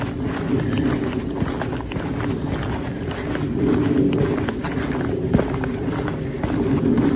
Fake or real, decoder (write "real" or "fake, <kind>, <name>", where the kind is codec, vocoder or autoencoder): real